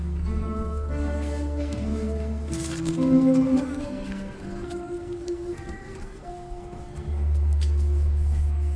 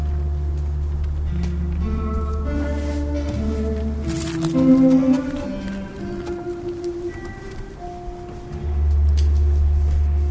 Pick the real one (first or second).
second